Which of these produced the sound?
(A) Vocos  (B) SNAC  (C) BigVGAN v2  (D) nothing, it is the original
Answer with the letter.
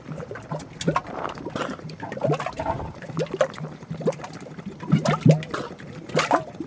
D